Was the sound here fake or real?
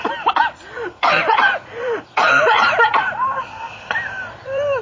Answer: fake